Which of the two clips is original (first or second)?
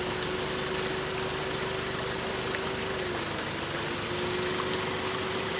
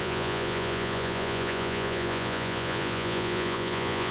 first